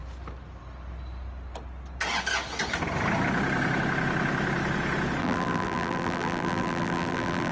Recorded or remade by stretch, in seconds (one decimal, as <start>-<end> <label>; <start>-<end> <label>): 0.0-5.2 recorded; 5.2-7.5 remade